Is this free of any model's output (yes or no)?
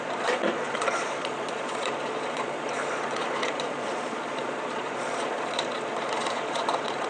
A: no